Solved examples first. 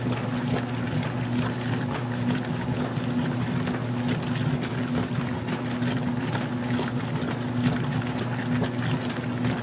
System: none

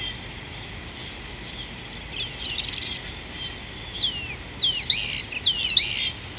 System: none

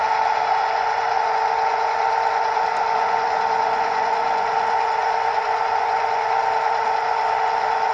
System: vocoder, Vocos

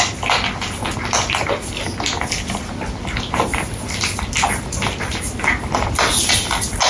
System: none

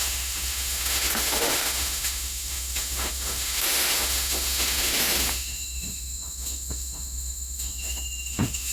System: autoencoder, DAC-VAE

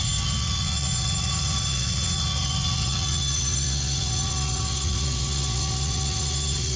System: vocoder, Vocos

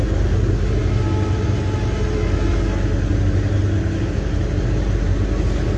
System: none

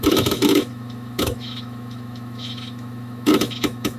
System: autoencoder, DAC-VAE